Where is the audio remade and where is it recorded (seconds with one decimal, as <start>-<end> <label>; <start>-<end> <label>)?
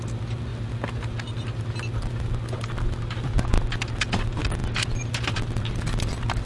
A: 0.0-6.5 recorded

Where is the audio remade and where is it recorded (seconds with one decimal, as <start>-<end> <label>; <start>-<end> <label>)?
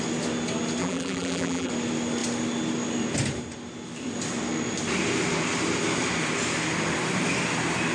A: 0.0-0.8 recorded; 0.8-1.7 remade; 1.7-7.9 recorded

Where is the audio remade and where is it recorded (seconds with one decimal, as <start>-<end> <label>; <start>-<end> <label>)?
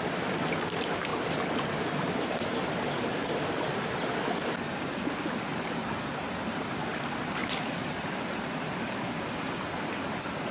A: 0.0-7.4 recorded; 7.4-8.7 remade; 8.7-10.5 recorded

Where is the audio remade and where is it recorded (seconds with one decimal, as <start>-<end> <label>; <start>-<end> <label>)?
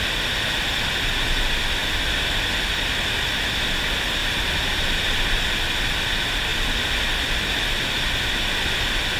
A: 0.0-4.2 recorded; 4.2-5.4 remade; 5.4-9.2 recorded